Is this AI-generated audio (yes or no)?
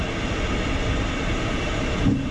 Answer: no